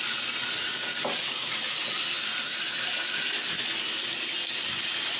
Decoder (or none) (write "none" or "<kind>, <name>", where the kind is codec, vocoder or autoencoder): none